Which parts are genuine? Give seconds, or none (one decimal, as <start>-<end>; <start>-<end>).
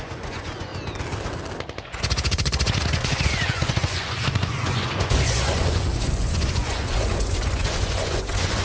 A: 0.7-1.8